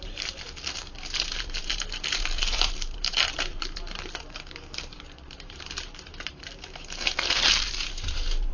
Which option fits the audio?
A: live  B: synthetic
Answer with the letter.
B